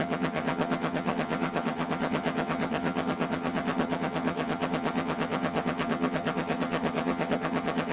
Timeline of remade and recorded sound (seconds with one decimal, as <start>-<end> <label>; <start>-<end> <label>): 0.0-7.9 remade